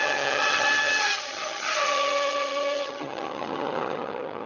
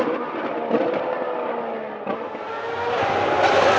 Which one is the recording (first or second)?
second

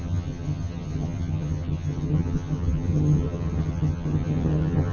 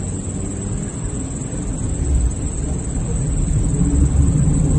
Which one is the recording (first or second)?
second